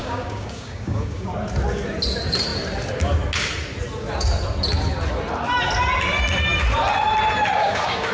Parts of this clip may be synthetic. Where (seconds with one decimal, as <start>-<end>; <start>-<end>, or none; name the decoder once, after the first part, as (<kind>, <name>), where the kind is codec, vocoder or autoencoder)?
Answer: 0.0-1.3 (codec, DAC); 7.6-8.1